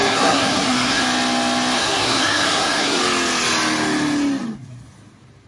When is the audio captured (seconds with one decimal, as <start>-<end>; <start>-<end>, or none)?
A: 1.0-1.8; 3.0-5.5